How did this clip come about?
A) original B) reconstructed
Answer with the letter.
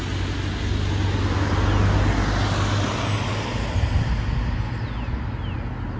A